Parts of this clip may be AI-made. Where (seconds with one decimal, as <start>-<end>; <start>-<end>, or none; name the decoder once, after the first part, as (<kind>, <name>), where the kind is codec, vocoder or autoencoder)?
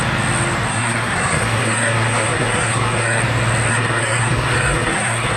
0.7-3.2 (codec, SNAC); 3.7-5.4